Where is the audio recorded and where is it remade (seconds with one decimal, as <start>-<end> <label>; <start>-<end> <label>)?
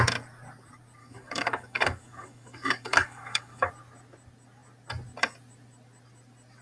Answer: 0.0-1.0 recorded; 1.0-3.7 remade; 3.7-6.6 recorded